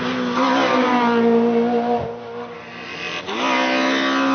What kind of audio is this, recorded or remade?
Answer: recorded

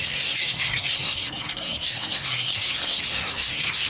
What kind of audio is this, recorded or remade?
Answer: remade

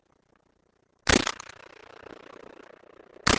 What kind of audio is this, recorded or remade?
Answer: recorded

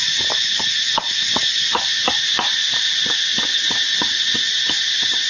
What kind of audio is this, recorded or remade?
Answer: recorded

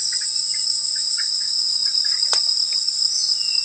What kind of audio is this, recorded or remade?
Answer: recorded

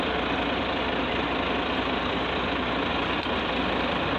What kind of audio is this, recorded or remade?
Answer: remade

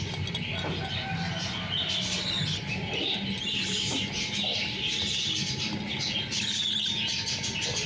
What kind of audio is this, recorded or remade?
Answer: recorded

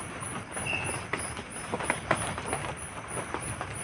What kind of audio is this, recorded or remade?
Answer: recorded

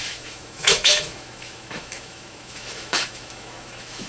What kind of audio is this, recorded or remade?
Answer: remade